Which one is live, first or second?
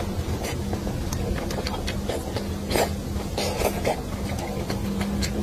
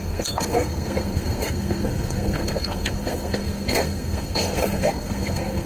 first